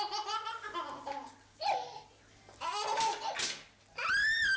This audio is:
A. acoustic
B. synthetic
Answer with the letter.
A